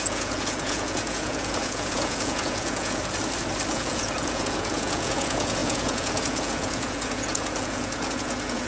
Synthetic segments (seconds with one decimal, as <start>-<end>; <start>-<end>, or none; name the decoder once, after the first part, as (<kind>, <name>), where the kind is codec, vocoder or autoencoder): 0.0-3.0 (vocoder, Vocos); 3.7-8.7